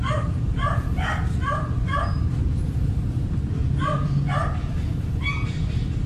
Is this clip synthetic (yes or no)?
no